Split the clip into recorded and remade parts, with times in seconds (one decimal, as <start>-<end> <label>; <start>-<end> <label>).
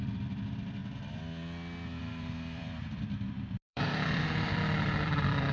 0.0-0.8 remade; 0.8-2.0 recorded; 2.0-5.5 remade